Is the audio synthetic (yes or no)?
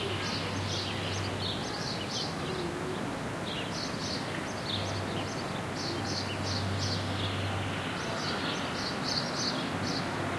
no